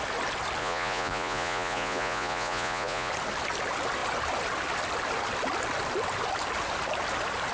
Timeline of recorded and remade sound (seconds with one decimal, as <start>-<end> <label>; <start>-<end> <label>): 0.0-0.6 recorded; 0.6-3.1 remade; 3.1-7.5 recorded